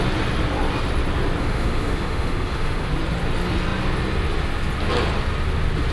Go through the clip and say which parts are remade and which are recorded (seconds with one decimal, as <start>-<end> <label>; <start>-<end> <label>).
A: 0.0-1.4 recorded; 1.4-2.9 remade; 2.9-5.9 recorded